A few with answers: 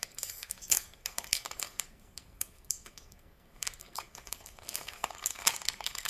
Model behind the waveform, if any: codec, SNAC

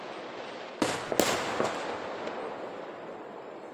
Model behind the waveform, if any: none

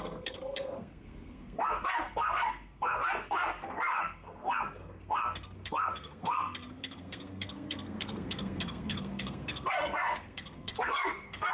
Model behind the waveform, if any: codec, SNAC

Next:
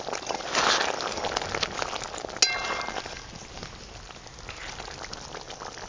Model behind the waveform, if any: none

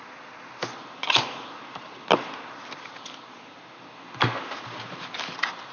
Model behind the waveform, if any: none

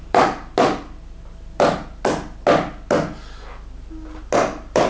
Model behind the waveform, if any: none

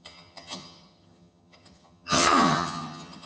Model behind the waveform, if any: vocoder, HiFi-GAN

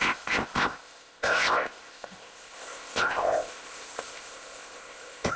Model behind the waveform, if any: codec, ZipCodec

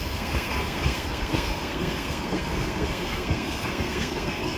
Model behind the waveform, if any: codec, SNAC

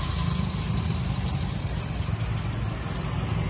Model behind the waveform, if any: none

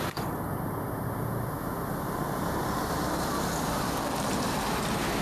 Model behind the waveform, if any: none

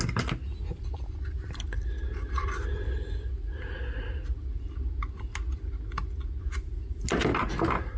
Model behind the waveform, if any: none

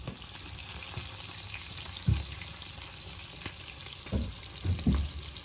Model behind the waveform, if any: none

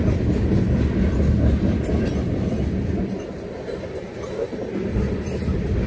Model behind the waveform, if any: none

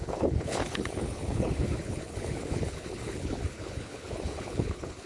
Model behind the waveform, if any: codec, HILCodec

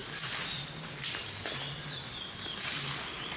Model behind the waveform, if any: none